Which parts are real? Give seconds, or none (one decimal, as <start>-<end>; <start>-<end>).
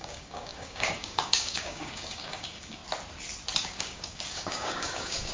2.8-3.6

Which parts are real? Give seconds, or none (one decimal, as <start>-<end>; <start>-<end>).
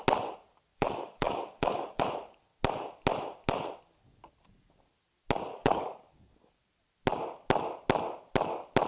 0.0-0.7; 2.0-5.5; 6.5-8.9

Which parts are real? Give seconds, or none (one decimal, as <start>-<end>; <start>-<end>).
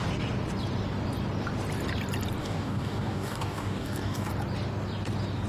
0.0-2.4; 4.3-5.5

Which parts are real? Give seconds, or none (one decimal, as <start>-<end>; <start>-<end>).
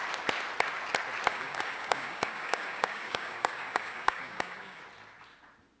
0.0-1.3; 4.8-5.8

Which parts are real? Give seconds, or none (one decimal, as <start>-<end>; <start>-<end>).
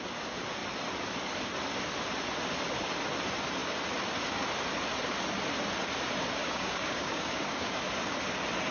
0.0-6.4; 7.8-8.7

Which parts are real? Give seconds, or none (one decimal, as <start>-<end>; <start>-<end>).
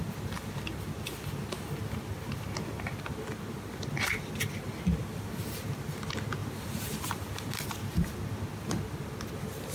0.0-9.7